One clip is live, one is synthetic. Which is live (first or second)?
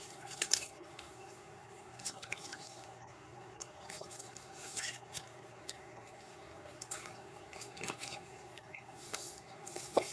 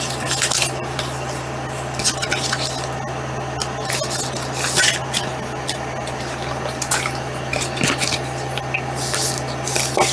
second